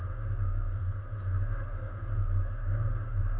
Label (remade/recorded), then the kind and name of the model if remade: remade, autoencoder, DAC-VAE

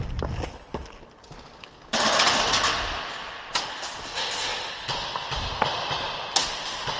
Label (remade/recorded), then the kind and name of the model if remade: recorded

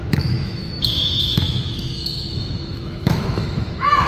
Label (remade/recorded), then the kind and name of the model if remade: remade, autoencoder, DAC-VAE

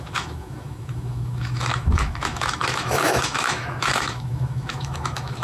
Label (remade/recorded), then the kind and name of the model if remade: remade, autoencoder, DAC-VAE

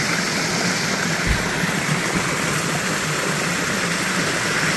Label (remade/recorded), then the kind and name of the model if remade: recorded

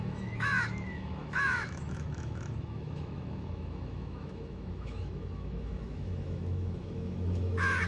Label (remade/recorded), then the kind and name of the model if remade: remade, autoencoder, DAC-VAE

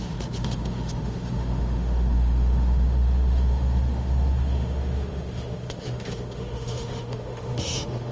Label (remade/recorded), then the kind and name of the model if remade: remade, autoencoder, DAC-VAE